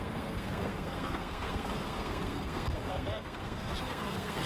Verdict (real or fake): fake